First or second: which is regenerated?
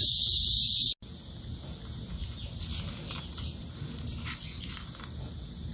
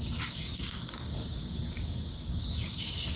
second